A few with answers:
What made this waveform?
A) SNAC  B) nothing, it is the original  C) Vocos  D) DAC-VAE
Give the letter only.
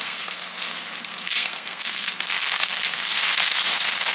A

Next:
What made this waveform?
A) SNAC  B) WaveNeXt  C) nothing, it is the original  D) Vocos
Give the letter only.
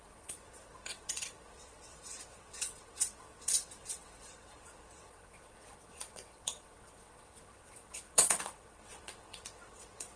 B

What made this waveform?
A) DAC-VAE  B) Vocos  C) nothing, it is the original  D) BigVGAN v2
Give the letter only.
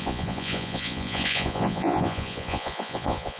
B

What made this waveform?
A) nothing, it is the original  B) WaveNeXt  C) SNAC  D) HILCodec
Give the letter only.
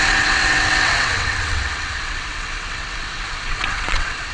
B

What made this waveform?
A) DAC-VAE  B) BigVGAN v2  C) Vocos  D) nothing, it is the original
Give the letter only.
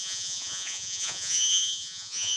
C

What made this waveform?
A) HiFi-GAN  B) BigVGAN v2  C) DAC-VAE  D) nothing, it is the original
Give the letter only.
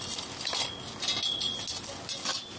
D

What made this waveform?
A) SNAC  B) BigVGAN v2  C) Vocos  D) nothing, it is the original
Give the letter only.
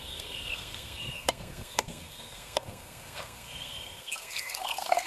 A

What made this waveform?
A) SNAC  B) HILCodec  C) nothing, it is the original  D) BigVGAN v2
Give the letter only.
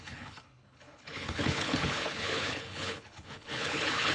B